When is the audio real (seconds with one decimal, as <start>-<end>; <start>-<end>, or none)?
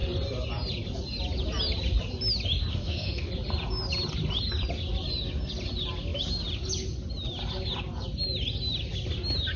0.0-2.7; 3.3-9.6